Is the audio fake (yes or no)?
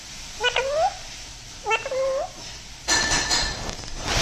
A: no